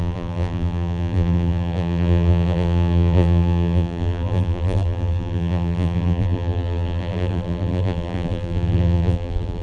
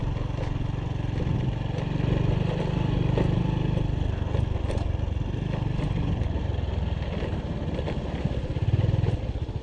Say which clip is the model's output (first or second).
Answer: first